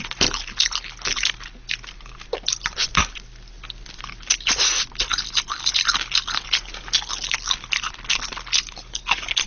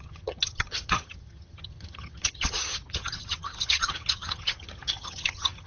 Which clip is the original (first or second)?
first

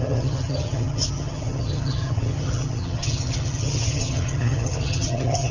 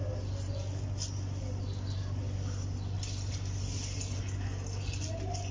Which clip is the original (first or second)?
second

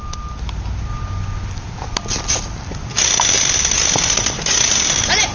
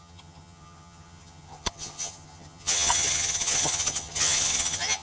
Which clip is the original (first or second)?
first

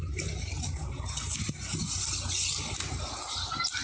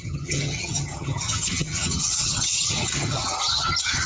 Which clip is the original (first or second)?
first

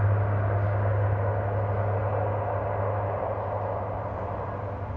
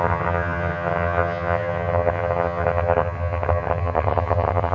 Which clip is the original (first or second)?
first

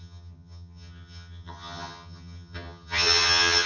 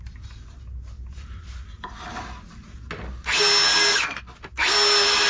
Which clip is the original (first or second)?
second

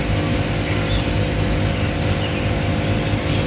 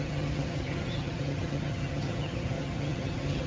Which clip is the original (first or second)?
first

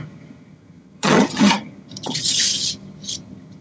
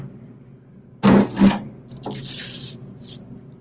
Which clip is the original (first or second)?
second